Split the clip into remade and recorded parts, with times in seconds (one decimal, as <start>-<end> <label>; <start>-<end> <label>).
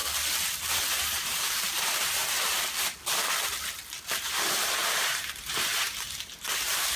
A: 0.0-0.9 recorded; 0.9-2.2 remade; 2.2-4.8 recorded; 4.8-7.0 remade